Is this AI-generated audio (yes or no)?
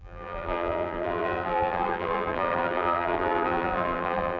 yes